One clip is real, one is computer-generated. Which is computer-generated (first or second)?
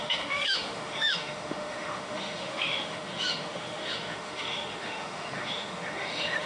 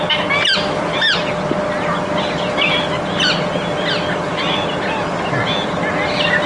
first